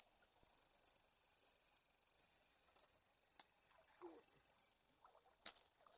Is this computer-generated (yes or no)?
no